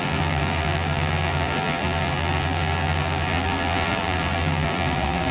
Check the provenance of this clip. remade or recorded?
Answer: remade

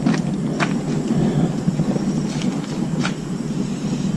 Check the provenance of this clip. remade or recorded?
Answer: recorded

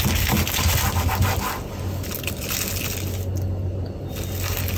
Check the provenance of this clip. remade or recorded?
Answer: recorded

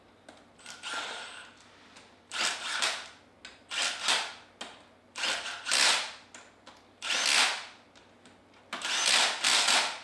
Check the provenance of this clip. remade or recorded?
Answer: recorded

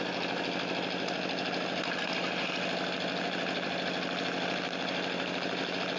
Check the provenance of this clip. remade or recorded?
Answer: recorded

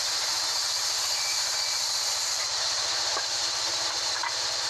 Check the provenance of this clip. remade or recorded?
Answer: remade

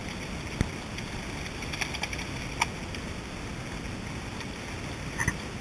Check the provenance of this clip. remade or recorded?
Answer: recorded